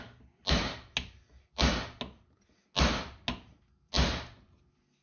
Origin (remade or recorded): recorded